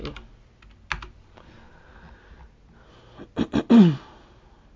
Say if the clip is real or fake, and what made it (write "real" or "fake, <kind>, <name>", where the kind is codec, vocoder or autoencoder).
real